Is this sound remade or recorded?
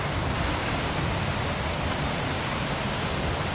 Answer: recorded